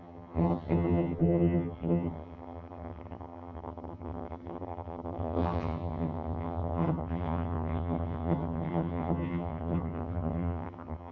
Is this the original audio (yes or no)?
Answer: no